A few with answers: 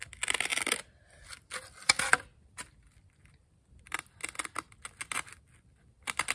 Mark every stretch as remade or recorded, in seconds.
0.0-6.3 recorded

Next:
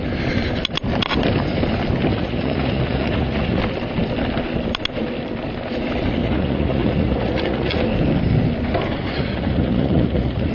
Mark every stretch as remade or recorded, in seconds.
0.0-2.1 recorded; 2.1-3.6 remade; 3.6-6.2 recorded; 6.2-7.8 remade; 7.8-8.9 recorded; 8.9-10.5 remade

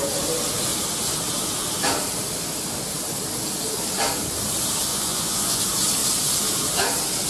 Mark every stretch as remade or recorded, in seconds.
0.0-4.9 recorded; 4.9-5.6 remade; 5.6-7.3 recorded